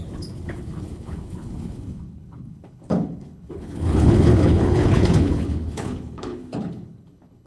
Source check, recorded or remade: remade